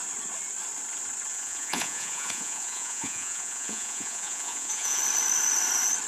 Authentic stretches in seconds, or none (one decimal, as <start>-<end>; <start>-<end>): 0.0-1.3; 5.0-6.1